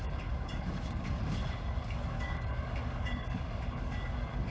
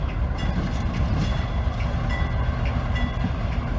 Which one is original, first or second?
second